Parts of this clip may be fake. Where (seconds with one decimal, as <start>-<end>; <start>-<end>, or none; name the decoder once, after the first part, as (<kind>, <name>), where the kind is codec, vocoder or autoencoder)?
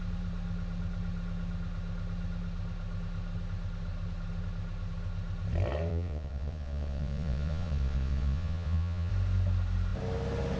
5.9-9.1 (vocoder, Vocos)